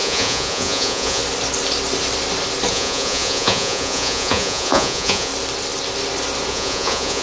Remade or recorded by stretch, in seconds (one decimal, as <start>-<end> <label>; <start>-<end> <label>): 0.0-1.2 remade; 1.2-2.7 recorded; 2.7-5.3 remade; 5.3-6.5 recorded; 6.5-7.2 remade